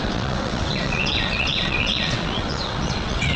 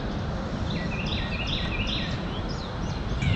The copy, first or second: first